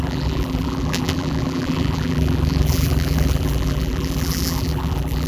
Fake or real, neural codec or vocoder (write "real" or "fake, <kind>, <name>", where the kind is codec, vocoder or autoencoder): fake, vocoder, BigVGAN v2